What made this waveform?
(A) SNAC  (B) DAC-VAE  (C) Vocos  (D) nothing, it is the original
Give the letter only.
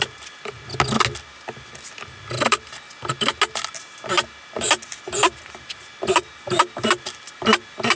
D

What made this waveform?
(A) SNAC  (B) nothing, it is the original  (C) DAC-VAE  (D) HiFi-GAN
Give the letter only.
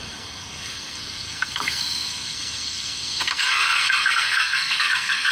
A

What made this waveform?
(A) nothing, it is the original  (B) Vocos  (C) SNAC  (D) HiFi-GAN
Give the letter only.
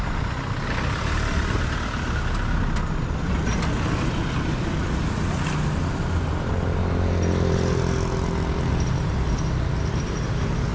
A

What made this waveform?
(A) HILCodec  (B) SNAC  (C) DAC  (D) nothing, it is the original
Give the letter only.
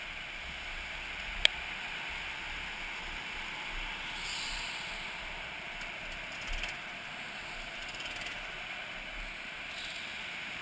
D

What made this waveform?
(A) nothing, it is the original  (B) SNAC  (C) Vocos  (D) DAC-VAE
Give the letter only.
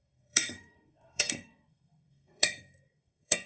B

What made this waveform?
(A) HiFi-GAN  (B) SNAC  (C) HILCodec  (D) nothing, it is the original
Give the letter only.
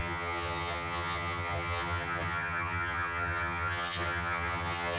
A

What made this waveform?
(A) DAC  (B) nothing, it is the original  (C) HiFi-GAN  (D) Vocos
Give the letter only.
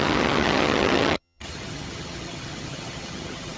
C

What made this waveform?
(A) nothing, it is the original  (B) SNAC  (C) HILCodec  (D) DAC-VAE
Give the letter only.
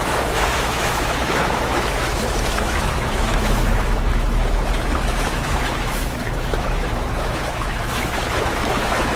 D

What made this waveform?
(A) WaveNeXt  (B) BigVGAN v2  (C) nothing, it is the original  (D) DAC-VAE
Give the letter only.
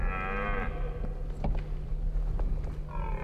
C